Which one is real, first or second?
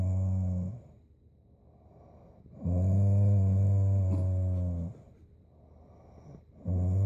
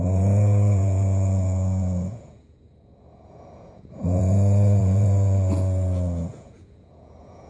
first